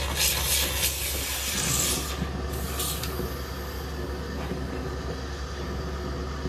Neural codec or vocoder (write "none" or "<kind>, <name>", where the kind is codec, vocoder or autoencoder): none